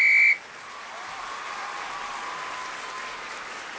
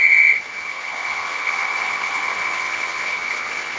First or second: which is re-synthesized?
second